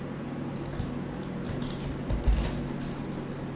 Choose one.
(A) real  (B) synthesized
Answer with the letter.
A